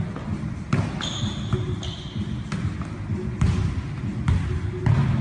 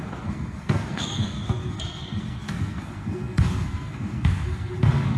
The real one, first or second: first